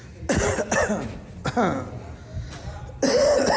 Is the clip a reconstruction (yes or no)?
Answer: no